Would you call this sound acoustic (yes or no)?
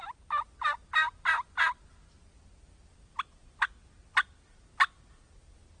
yes